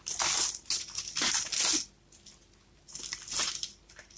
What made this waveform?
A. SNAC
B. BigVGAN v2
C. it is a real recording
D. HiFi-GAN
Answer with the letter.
C